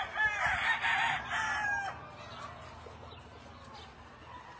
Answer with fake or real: real